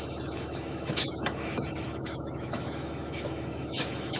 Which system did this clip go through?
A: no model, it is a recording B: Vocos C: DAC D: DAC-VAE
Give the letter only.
D